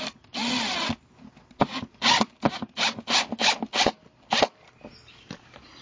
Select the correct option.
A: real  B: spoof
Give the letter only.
A